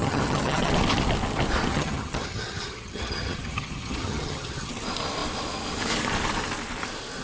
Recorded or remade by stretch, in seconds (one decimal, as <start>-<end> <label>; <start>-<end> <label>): 0.0-0.7 remade; 0.7-1.7 recorded; 1.7-4.7 remade; 4.7-7.2 recorded